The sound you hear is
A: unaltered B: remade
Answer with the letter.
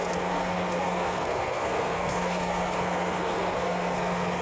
B